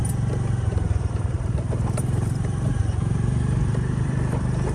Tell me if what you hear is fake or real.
fake